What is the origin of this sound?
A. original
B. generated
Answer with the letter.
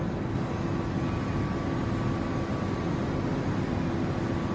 A